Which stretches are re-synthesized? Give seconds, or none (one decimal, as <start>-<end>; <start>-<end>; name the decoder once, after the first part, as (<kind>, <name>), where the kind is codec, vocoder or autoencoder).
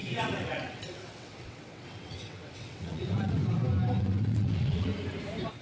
0.0-3.4 (vocoder, WaveNeXt); 4.0-4.9